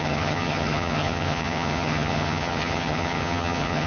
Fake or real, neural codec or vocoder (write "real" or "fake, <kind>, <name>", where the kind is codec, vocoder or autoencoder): fake, vocoder, HiFi-GAN